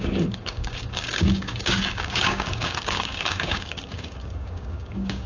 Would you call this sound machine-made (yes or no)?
yes